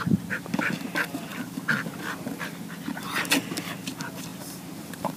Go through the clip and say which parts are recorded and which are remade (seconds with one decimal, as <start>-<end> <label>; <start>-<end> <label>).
0.0-4.3 recorded; 4.3-5.2 remade